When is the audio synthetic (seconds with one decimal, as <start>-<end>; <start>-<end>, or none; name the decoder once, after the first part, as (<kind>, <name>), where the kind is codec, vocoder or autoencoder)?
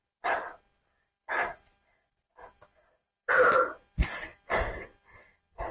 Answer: none